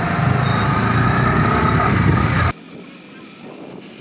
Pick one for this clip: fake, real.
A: real